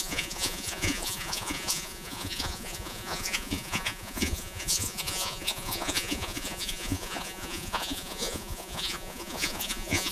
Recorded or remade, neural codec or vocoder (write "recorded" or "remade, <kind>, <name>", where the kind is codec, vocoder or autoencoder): remade, vocoder, Vocos